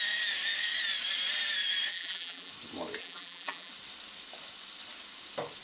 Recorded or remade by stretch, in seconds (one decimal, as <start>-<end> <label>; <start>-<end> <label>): 0.0-1.9 recorded; 1.9-2.5 remade; 2.5-3.0 recorded; 3.0-3.7 remade; 3.7-5.6 recorded